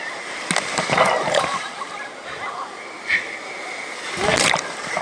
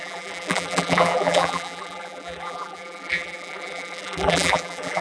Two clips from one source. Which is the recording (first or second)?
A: first